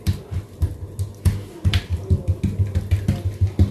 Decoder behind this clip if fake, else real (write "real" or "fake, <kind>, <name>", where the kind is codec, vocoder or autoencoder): real